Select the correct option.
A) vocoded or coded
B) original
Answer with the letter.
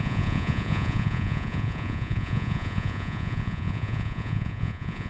A